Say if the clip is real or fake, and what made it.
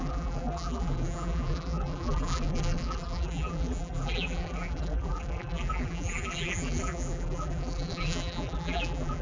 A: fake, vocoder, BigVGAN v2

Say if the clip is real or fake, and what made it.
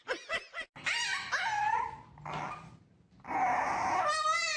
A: real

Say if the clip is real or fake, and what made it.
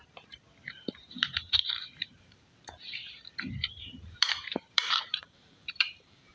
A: fake, vocoder, BigVGAN v2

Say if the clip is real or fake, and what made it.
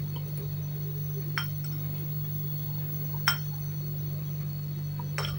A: real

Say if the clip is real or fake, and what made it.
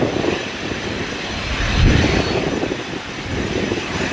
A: real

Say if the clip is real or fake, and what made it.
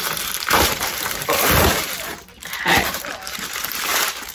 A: fake, vocoder, BigVGAN v2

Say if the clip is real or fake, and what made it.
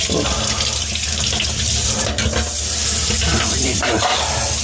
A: real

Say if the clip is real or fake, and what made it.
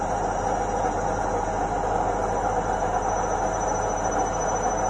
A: real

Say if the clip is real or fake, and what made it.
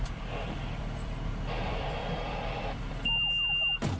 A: fake, vocoder, BigVGAN v2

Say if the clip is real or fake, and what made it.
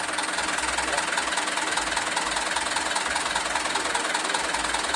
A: real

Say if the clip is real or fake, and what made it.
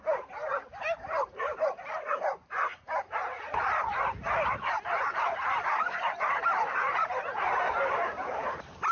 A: fake, vocoder, BigVGAN v2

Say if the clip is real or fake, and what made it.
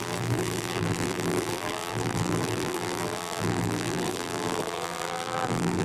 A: fake, vocoder, BigVGAN v2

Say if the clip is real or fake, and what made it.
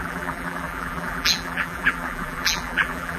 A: fake, vocoder, BigVGAN v2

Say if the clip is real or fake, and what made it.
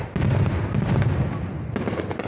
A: real